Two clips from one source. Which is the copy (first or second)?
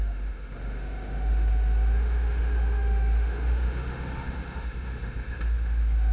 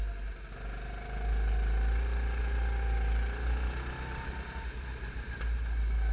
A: first